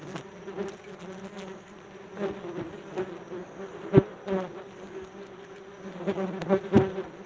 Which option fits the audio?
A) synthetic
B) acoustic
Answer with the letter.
B